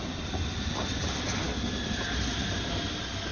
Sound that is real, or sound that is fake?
real